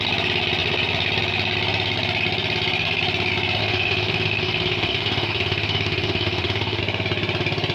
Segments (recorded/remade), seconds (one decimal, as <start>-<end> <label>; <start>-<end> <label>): 0.0-3.6 recorded; 3.6-6.8 remade; 6.8-7.7 recorded